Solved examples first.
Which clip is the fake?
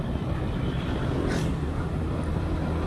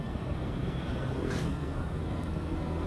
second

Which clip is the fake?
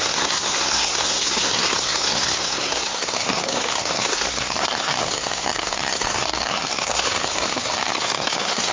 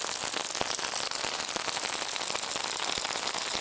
first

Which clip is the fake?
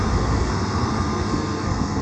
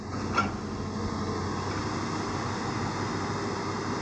first